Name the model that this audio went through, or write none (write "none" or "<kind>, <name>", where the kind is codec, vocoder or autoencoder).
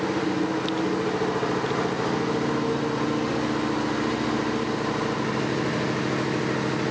none